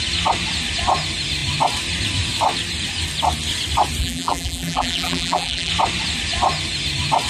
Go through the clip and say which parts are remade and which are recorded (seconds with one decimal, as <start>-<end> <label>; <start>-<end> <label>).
0.0-4.0 recorded; 4.0-5.7 remade; 5.7-7.3 recorded